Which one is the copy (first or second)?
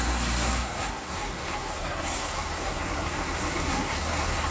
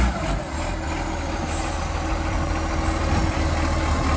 first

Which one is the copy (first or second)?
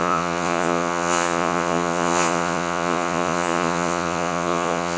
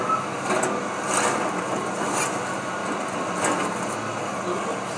first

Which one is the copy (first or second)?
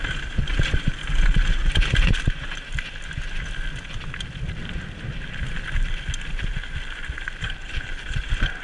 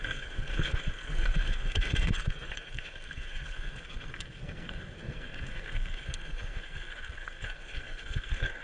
second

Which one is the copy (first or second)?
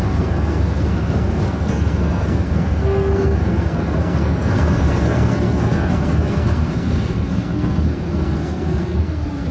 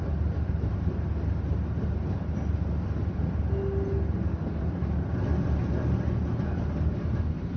first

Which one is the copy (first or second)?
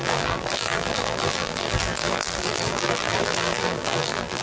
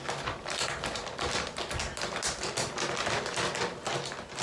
first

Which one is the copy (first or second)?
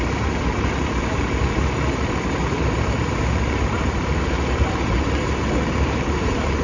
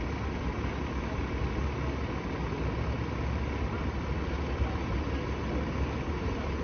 first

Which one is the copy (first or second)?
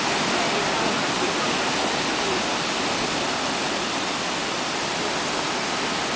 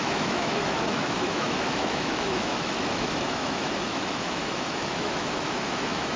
second